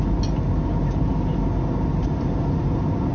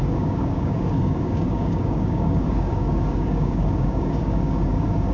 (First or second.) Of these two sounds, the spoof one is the second